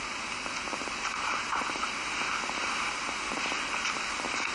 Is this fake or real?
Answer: real